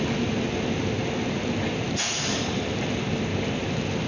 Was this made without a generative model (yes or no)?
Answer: yes